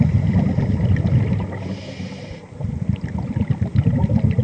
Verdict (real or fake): real